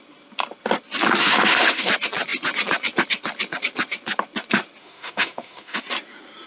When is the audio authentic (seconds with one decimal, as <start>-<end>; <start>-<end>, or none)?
0.0-1.2; 1.9-4.8; 5.8-6.5